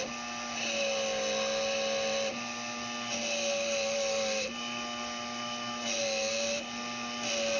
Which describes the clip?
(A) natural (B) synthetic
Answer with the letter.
A